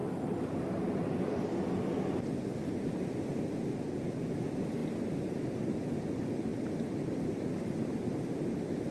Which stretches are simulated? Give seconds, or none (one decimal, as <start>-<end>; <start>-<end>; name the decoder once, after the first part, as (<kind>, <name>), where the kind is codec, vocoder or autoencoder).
4.8-6.0 (vocoder, BigVGAN v2); 6.5-7.9